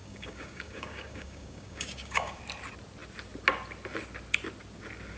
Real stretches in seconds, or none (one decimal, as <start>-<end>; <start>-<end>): 2.4-5.2